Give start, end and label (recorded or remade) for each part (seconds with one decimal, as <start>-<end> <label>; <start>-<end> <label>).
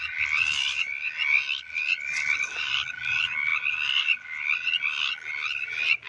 0.0-6.1 recorded